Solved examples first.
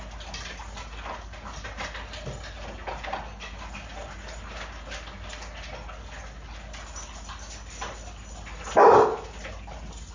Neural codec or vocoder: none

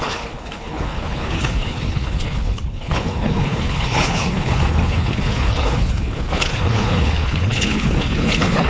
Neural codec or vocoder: codec, HILCodec